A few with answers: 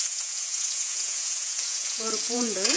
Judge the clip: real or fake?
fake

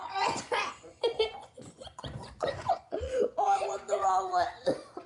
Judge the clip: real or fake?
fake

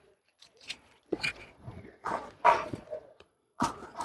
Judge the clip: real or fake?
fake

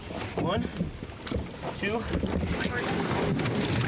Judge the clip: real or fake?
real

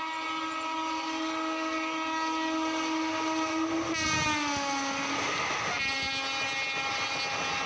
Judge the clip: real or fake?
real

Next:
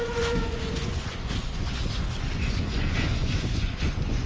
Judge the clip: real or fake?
fake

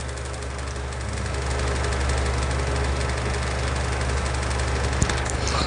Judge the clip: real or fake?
real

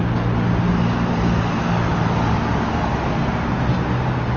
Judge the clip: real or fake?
real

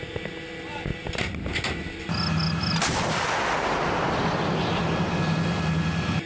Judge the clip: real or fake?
real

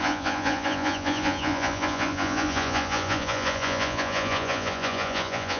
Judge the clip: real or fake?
fake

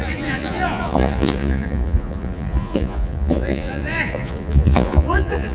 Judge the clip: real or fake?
fake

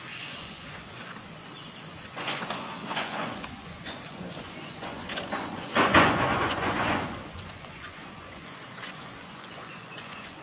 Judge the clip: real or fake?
fake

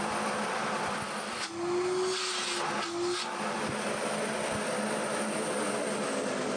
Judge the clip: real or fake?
real